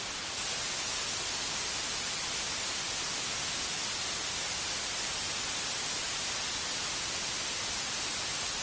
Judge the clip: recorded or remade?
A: recorded